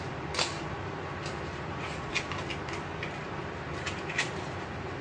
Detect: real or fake real